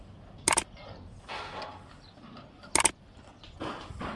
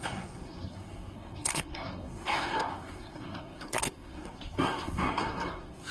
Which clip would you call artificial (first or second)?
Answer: second